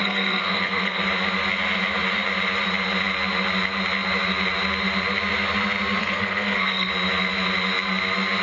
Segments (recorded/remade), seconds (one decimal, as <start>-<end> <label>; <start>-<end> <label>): 0.0-1.0 remade; 1.0-6.0 recorded; 6.0-6.9 remade; 6.9-8.4 recorded